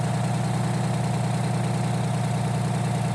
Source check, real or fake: real